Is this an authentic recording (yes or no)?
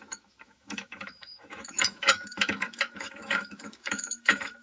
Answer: no